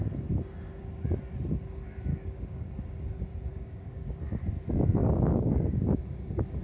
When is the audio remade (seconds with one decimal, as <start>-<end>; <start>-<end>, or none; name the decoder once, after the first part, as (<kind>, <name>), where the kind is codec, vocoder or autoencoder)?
2.1-2.7 (codec, DAC); 3.5-4.2; 5.0-6.6